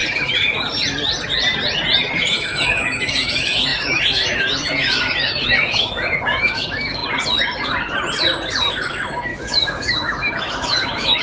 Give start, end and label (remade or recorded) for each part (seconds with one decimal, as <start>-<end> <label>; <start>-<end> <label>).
0.0-2.2 recorded; 2.2-7.0 remade; 7.0-8.7 recorded; 8.7-11.2 remade